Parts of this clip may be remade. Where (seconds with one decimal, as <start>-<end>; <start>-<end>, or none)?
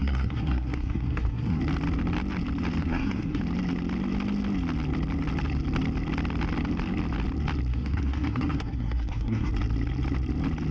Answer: 0.0-1.6; 2.8-3.4; 7.7-9.5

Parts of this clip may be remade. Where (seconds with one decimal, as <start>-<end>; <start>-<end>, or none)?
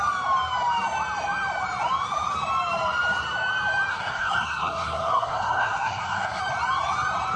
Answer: 3.9-6.4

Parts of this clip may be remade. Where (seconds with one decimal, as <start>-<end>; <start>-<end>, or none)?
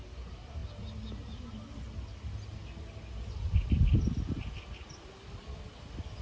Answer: none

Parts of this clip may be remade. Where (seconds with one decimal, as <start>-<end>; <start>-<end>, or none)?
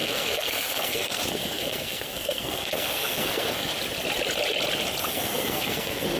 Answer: 0.0-3.7; 5.1-6.2